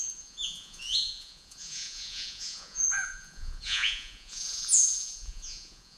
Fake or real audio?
fake